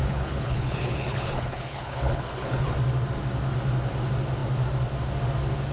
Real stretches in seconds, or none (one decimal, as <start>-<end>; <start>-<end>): 2.7-5.7